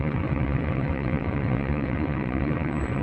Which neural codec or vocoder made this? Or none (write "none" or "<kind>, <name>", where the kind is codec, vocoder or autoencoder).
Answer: vocoder, WaveNeXt